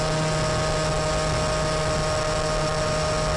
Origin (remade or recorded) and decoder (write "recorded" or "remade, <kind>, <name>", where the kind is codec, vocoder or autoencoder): recorded